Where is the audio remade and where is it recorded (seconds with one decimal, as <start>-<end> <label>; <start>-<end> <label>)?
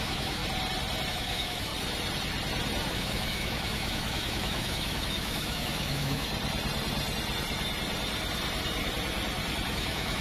0.0-0.4 remade; 0.4-1.1 recorded; 1.1-1.7 remade; 1.7-2.9 recorded; 2.9-6.3 remade; 6.3-9.7 recorded; 9.7-10.2 remade